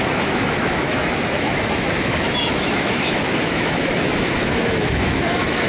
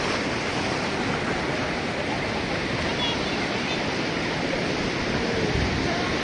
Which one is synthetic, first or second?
first